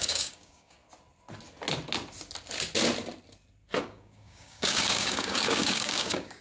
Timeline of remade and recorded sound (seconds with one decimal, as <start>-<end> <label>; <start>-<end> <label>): 0.0-0.8 remade; 0.8-3.8 recorded; 3.8-6.4 remade